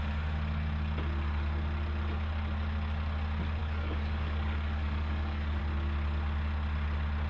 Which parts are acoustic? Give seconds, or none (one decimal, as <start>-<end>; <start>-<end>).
0.0-3.6; 5.6-7.3